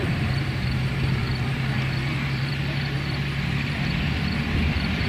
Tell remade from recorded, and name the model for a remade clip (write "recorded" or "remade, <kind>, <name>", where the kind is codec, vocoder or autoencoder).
remade, vocoder, BigVGAN v2